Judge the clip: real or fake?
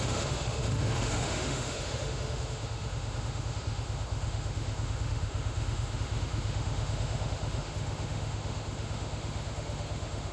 fake